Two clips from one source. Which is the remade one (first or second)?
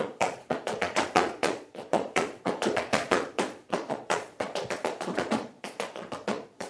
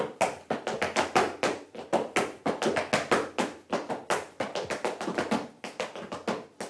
first